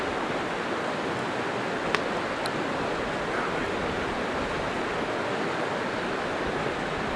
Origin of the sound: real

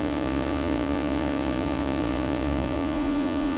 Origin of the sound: fake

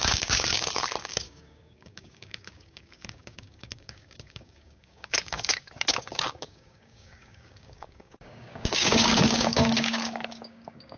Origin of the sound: fake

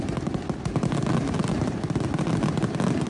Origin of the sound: real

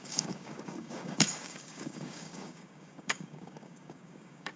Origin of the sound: fake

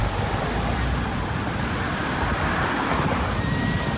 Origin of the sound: real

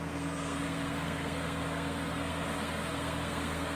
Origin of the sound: fake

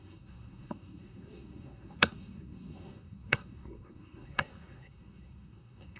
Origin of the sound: fake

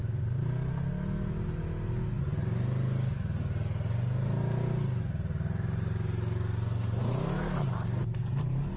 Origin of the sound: real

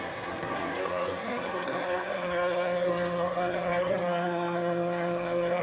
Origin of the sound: fake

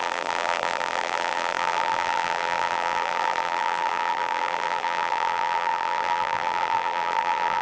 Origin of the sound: fake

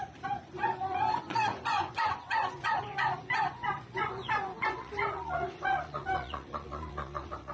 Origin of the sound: fake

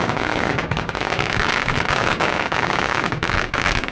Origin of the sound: fake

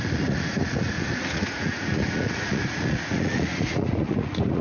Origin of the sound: fake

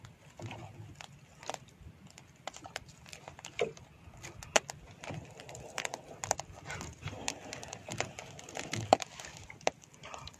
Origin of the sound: real